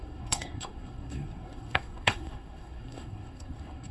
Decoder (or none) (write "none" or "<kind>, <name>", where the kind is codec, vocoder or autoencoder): codec, SNAC